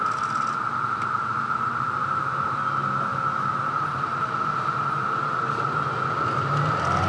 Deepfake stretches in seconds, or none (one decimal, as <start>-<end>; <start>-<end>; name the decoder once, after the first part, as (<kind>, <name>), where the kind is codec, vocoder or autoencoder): 2.0-2.6 (vocoder, BigVGAN v2); 3.1-4.9